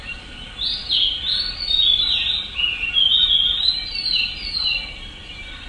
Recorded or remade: recorded